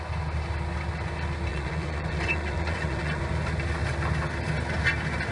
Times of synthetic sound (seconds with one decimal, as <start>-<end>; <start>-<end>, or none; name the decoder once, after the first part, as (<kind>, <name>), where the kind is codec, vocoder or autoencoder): 1.5-3.2 (vocoder, Vocos)